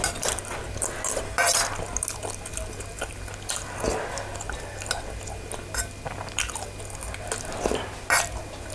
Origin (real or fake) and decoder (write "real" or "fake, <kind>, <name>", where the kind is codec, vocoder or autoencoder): real